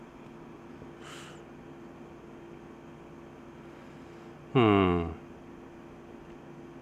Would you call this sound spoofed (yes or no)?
no